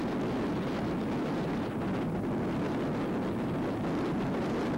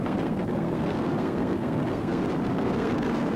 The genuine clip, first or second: first